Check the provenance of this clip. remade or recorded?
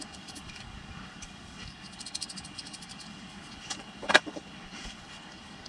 remade